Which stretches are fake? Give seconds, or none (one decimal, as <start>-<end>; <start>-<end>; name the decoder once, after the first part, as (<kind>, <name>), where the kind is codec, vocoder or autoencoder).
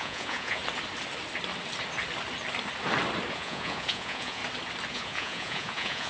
0.0-0.6 (vocoder, Vocos); 3.3-4.4; 4.9-6.1